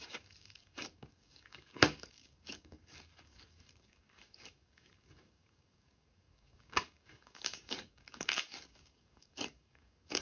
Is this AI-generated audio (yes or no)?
yes